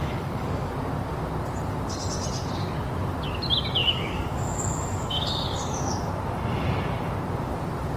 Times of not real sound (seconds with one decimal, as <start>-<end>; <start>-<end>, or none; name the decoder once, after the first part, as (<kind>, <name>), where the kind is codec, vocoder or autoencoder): 0.0-0.7 (codec, DAC); 3.8-6.1

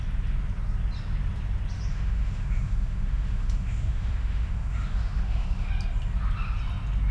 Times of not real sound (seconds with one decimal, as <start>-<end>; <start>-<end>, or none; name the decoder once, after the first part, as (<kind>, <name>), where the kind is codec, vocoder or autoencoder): 1.9-5.7 (autoencoder, DAC-VAE)